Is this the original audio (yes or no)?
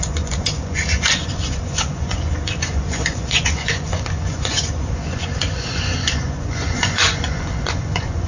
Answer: no